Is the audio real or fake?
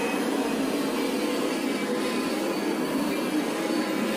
real